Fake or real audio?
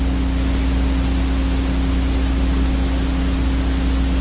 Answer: real